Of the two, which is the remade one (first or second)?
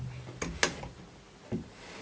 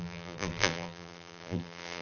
second